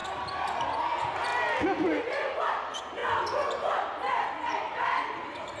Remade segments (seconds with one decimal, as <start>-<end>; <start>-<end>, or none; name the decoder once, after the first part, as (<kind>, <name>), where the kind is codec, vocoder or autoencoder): none